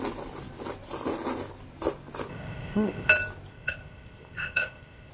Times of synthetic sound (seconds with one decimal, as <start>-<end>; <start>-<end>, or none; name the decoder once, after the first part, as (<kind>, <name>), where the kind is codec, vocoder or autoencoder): 2.3-3.1 (codec, ZipCodec); 3.5-5.1